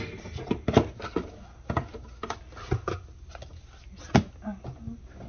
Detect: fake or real real